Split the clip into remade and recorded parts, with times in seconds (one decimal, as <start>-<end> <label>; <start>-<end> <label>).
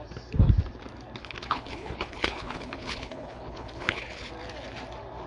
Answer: 0.0-1.2 recorded; 1.2-4.3 remade; 4.3-5.3 recorded